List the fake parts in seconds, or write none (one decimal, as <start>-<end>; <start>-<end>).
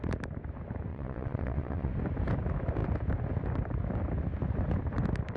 0.9-1.9